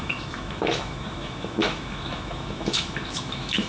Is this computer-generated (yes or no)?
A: yes